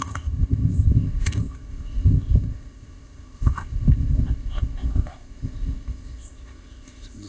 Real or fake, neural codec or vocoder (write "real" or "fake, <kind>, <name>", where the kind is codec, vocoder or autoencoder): fake, codec, ZipCodec